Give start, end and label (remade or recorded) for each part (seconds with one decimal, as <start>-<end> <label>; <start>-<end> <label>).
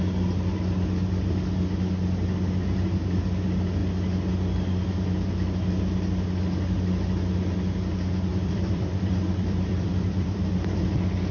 0.0-8.3 recorded; 8.3-10.8 remade; 10.8-11.3 recorded